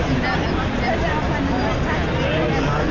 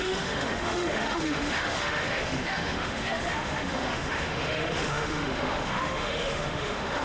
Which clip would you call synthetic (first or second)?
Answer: second